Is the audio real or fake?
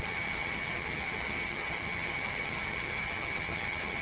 fake